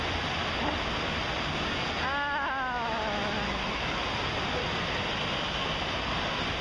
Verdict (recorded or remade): recorded